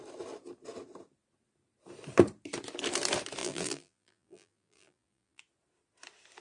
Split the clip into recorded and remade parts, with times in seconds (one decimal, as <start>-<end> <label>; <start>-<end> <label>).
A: 0.0-3.4 recorded; 3.4-5.4 remade; 5.4-6.4 recorded